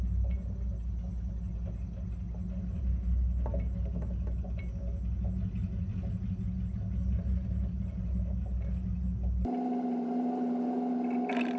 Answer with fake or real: real